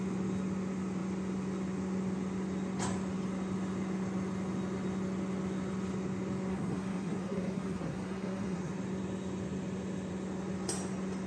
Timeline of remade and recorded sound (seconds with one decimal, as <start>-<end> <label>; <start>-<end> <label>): 0.0-6.5 recorded; 6.5-8.7 remade; 8.7-11.3 recorded